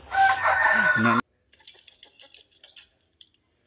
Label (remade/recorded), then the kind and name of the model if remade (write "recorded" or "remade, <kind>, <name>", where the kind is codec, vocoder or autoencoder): recorded